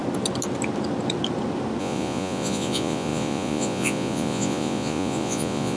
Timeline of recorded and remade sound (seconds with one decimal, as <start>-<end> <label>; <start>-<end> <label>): 0.0-1.8 recorded; 1.8-5.8 remade